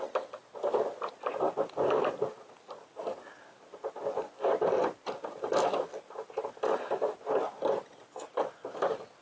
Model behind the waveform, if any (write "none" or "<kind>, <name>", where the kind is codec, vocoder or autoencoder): none